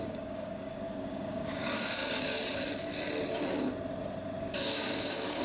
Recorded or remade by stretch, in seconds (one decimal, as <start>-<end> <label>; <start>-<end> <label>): 0.0-2.0 remade; 2.0-4.4 recorded; 4.4-5.4 remade